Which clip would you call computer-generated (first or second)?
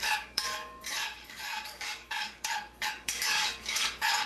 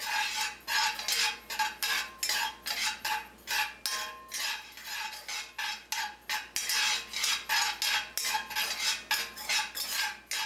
first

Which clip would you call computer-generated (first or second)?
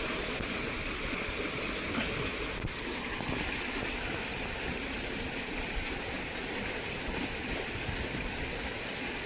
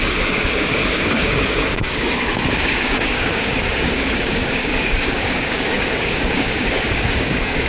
second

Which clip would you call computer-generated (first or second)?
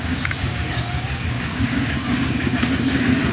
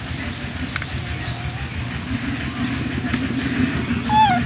first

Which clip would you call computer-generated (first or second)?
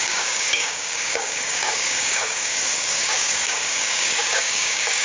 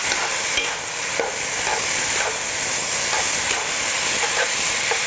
first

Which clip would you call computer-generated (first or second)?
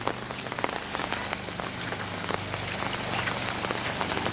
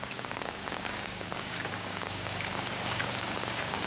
second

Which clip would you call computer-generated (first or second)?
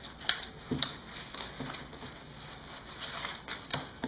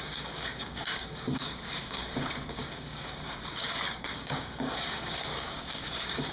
second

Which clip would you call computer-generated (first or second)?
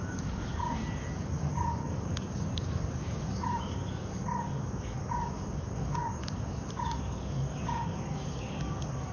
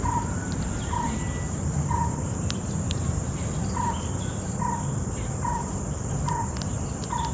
first